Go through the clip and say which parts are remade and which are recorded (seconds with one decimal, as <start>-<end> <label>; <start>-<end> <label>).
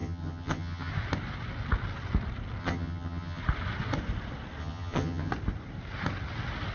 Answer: 0.0-0.9 remade; 0.9-2.6 recorded; 2.6-3.4 remade; 3.4-4.6 recorded; 4.6-5.3 remade; 5.3-6.7 recorded